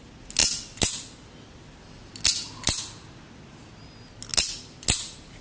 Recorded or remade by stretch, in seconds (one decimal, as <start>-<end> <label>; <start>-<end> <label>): 0.0-5.4 recorded